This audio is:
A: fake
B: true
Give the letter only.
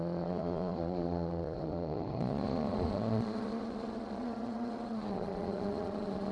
A